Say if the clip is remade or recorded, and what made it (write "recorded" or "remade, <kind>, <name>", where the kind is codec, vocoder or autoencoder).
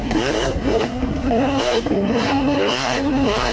remade, codec, SNAC